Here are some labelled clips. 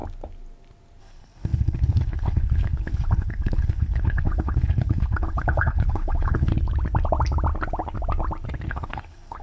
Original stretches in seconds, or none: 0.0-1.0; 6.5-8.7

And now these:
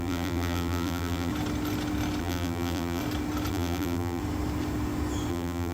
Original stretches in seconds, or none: 1.3-2.2; 3.0-3.5; 4.2-5.3

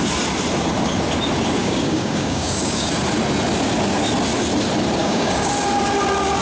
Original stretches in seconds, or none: 0.0-1.6; 2.9-5.0; 5.5-6.4

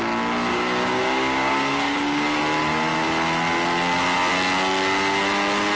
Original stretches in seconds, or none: 0.0-0.5; 2.4-5.8

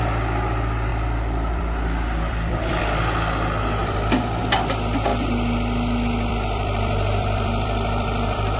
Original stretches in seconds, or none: 0.0-0.9; 2.8-3.8; 4.4-5.1